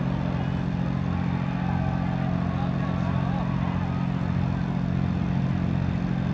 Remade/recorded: recorded